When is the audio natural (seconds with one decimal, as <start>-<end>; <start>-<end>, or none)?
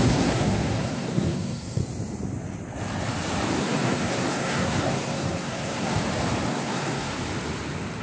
1.8-3.6; 6.0-6.5; 7.2-8.0